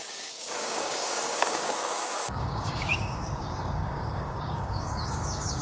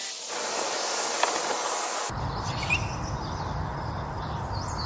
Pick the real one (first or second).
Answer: second